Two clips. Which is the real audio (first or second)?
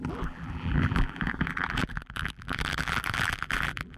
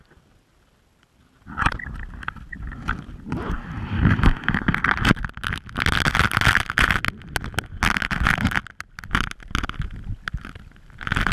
second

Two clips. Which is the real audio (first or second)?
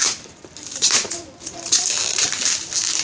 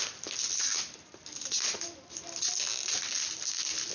second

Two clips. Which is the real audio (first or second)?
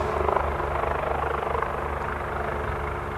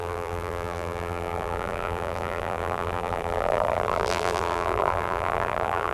first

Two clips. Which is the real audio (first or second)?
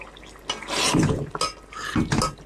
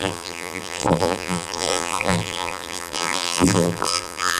first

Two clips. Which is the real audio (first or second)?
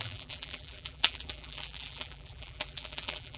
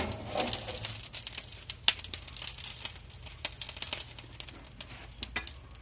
second